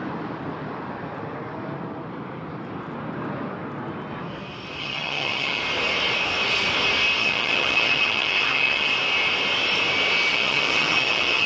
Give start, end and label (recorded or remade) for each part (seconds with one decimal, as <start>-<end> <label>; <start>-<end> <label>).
0.0-4.8 recorded; 4.8-5.6 remade; 5.6-7.2 recorded; 7.2-8.9 remade; 8.9-10.3 recorded; 10.3-11.5 remade